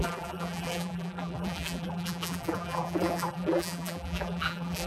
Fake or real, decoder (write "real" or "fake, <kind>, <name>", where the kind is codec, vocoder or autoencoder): fake, vocoder, BigVGAN v2